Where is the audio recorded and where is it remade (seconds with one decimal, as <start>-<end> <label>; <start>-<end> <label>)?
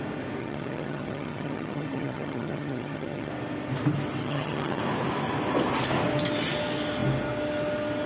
0.0-0.4 recorded; 0.4-3.3 remade; 3.3-4.2 recorded; 4.2-4.8 remade; 4.8-8.1 recorded